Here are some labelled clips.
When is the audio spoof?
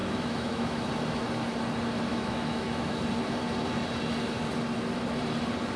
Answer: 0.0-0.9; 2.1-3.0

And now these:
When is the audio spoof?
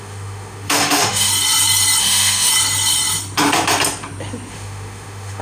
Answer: 0.0-1.3; 2.0-2.5; 4.5-5.4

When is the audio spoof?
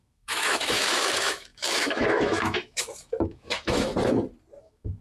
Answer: 0.0-3.9; 4.6-5.0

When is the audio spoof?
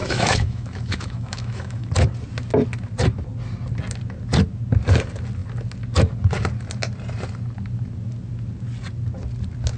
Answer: 0.0-1.9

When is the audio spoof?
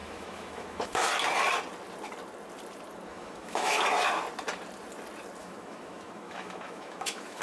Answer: 0.0-1.1; 3.1-3.8; 5.4-7.4